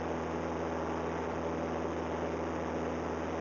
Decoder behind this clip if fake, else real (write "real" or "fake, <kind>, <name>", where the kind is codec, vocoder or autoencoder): real